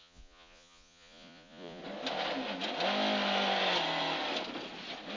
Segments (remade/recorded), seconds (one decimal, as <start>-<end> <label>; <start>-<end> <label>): 0.0-1.8 remade; 1.8-5.2 recorded